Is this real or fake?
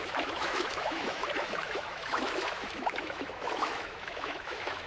fake